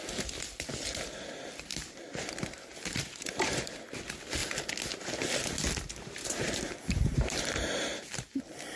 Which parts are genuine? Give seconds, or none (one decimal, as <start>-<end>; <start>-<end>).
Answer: 0.0-1.7; 3.6-6.2; 8.4-8.8

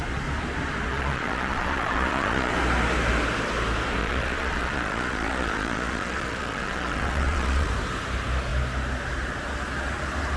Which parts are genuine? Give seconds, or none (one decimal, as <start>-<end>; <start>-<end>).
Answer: 0.0-0.9; 2.5-4.0; 7.7-10.4

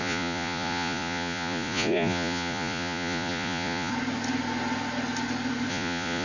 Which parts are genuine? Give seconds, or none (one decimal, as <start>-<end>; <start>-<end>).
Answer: 3.9-5.7

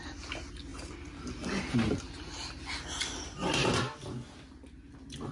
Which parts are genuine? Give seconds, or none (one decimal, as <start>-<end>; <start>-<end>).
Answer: 0.0-5.3

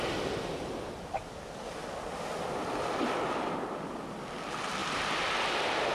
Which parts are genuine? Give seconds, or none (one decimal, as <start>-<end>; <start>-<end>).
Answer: 0.0-5.9

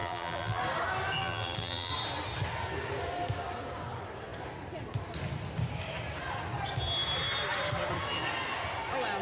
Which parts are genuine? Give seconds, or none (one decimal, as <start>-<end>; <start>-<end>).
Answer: 0.6-1.2; 1.9-9.2